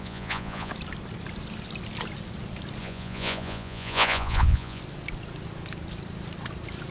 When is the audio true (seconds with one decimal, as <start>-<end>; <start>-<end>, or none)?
0.7-2.8; 4.8-6.9